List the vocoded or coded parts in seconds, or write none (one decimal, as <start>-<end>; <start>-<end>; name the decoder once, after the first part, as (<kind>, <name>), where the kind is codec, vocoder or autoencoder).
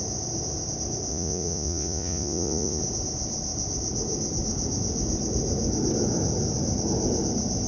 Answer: 1.1-2.8 (vocoder, Vocos)